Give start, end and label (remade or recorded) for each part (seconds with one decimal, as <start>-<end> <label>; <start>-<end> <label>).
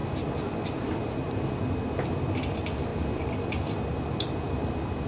0.0-1.6 remade; 1.6-2.9 recorded; 2.9-5.1 remade